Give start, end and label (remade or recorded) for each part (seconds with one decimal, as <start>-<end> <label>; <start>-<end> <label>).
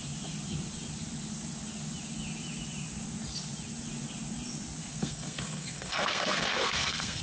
0.0-4.9 recorded; 4.9-7.2 remade